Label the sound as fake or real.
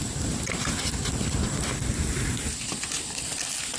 real